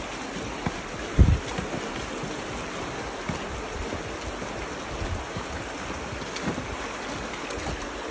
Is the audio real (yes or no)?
yes